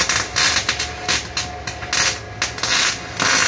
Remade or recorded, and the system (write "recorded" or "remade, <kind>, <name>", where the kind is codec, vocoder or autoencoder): recorded